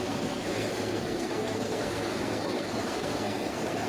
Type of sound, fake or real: fake